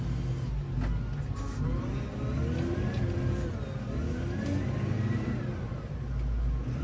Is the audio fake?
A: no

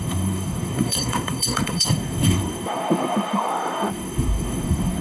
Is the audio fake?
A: yes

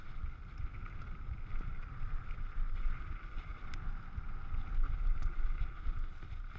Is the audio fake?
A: no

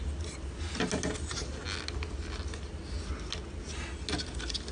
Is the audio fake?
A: no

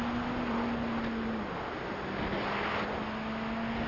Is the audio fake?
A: no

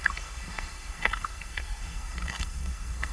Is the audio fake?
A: yes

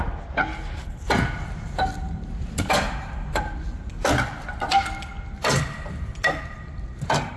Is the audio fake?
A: no